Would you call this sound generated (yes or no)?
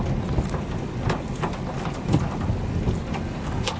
no